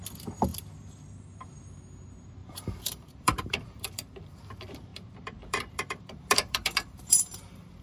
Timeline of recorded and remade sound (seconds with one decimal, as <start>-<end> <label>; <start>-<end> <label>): 0.0-2.4 recorded; 2.4-4.4 remade; 4.4-4.9 recorded; 4.9-7.8 remade